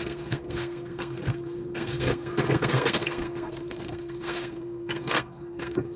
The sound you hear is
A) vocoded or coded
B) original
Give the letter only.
A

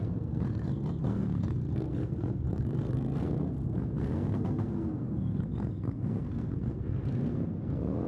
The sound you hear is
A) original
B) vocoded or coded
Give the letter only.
B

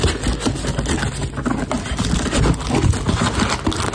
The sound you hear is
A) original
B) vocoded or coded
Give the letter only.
A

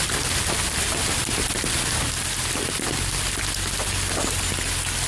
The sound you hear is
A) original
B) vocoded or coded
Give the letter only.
A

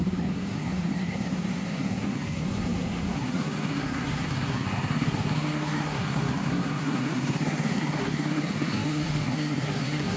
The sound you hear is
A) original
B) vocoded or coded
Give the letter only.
B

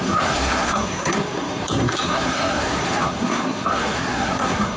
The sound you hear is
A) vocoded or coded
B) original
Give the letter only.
A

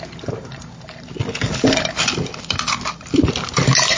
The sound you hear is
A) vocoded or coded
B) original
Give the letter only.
B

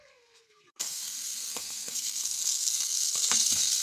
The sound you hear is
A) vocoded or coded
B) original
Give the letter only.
A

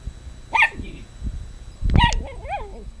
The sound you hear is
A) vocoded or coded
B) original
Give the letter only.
B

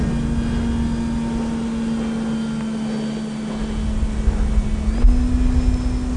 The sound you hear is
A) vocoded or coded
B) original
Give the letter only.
B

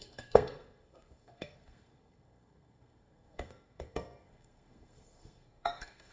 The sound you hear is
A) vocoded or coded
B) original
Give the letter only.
A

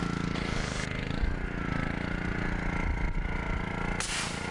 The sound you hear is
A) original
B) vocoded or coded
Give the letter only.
A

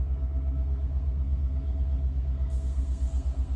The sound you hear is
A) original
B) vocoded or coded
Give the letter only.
B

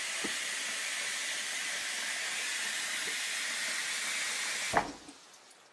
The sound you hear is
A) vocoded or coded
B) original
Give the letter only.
B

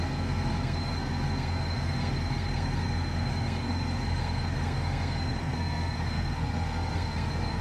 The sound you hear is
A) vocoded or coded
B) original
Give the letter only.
A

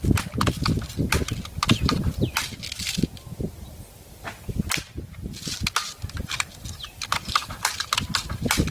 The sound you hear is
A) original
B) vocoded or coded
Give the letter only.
A